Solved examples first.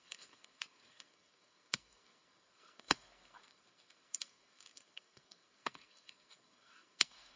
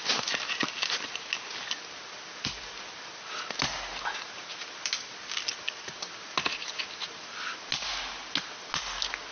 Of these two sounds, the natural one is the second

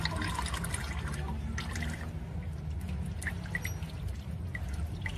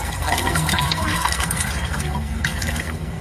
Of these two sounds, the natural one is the first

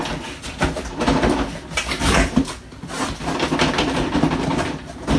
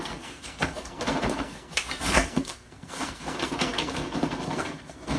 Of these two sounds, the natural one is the first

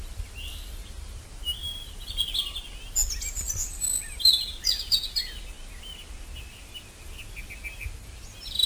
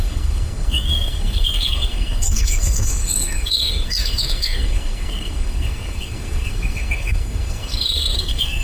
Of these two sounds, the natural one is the first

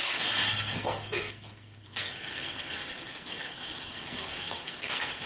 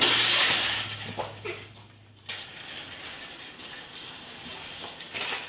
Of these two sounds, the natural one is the second